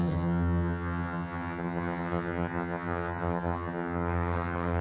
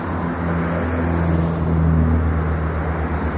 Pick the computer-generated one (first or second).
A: first